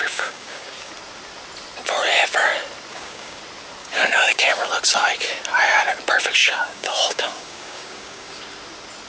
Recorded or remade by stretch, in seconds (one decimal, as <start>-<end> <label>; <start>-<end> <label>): 0.0-0.9 remade; 0.9-2.9 recorded; 2.9-3.4 remade; 3.4-3.8 recorded; 3.8-4.7 remade; 4.7-6.4 recorded; 6.4-8.4 remade; 8.4-9.1 recorded